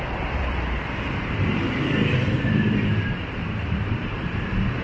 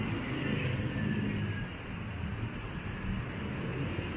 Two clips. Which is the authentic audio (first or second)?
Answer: second